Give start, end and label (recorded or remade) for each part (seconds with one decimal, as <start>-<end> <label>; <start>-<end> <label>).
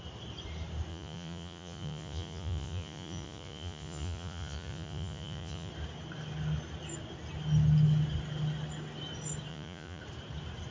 0.0-0.9 recorded; 0.9-5.7 remade; 5.7-9.5 recorded; 9.5-10.0 remade; 10.0-10.7 recorded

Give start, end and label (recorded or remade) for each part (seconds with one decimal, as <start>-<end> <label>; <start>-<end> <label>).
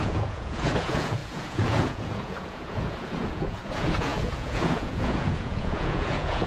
0.0-6.5 remade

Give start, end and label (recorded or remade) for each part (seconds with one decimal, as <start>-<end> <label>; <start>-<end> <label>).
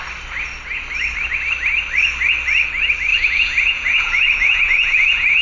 0.0-3.1 recorded; 3.1-5.4 remade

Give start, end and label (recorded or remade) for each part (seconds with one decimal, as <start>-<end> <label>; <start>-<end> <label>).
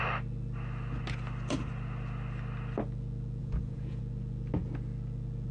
0.0-3.4 recorded; 3.4-4.0 remade; 4.0-5.5 recorded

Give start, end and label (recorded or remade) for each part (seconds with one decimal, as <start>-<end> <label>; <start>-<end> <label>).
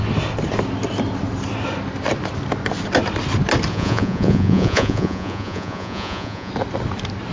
0.0-3.7 recorded; 3.7-6.5 remade; 6.5-7.3 recorded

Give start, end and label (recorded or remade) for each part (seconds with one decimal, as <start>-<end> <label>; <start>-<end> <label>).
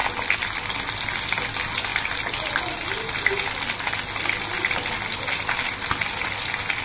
0.0-6.8 recorded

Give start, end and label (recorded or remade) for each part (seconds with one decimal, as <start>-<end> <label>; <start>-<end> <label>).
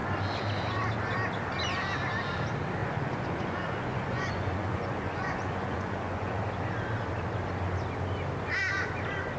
0.0-2.8 recorded; 2.8-6.4 remade; 6.4-9.4 recorded